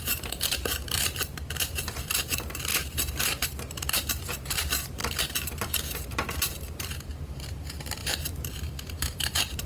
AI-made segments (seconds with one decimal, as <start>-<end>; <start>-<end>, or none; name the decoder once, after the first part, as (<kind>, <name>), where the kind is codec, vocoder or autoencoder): 0.0-9.7 (vocoder, BigVGAN v2)